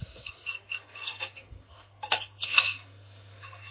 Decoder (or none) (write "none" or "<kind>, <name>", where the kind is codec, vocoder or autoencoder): codec, SNAC